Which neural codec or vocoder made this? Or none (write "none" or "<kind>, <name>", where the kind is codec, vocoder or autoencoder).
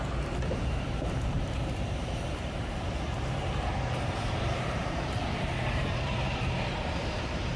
vocoder, BigVGAN v2